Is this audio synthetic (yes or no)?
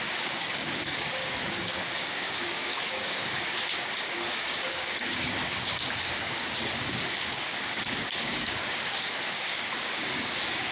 yes